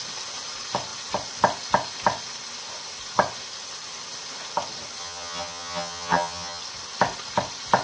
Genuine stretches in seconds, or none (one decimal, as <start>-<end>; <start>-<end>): 0.0-5.0; 6.6-7.8

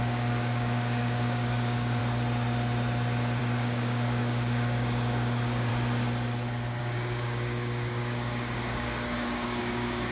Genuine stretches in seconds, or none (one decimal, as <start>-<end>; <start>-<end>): 2.0-3.4; 5.7-6.8

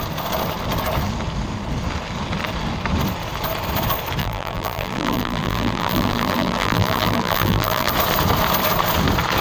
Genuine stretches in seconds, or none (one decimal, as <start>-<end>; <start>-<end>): 0.0-4.2; 7.9-9.4

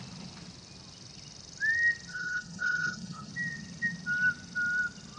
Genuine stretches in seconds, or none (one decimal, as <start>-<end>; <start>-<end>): 0.0-2.1; 3.3-5.2

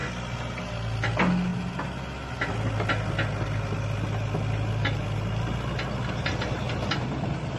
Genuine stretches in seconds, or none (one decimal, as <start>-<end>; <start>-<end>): 0.0-7.6

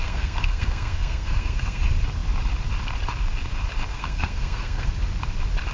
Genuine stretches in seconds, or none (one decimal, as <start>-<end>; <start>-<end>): 1.8-3.9; 4.9-5.7

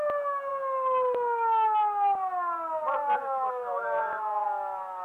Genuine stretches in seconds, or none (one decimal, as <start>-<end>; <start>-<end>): 0.0-4.0; 4.5-5.0

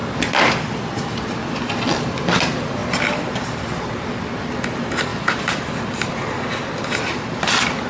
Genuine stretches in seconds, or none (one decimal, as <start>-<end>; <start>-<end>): 0.0-5.1; 5.7-7.9